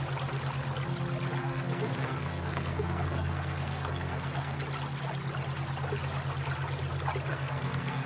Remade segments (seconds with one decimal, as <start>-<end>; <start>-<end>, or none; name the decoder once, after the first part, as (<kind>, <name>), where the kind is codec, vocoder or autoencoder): 1.4-4.6 (codec, SNAC); 7.3-8.1

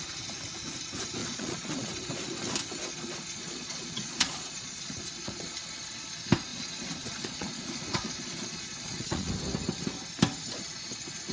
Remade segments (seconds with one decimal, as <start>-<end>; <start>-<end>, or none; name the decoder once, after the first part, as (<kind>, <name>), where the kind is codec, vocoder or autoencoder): 1.2-1.9 (vocoder, Vocos); 2.8-5.5; 6.5-9.3

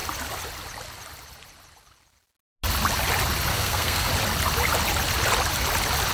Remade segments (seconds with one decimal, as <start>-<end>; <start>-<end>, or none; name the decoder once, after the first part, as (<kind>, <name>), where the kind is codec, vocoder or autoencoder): 3.5-4.1 (codec, SNAC)

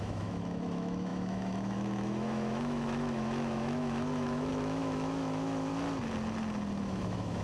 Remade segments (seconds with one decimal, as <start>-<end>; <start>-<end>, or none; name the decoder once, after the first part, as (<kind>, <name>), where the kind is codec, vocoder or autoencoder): 0.0-5.7 (autoencoder, DAC-VAE); 6.8-7.4

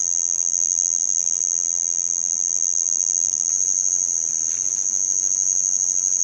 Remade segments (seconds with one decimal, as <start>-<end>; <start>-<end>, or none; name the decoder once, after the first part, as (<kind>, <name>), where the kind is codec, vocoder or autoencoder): 0.0-3.5 (vocoder, BigVGAN v2)

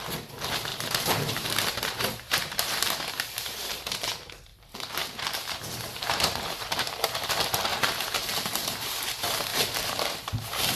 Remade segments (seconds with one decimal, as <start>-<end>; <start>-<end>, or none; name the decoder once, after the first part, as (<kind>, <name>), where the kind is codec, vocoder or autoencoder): 0.7-3.8 (vocoder, BigVGAN v2); 4.5-7.3; 7.7-8.9; 9.5-10.8